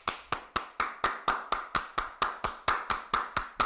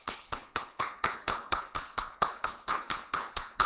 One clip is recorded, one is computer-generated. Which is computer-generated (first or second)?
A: second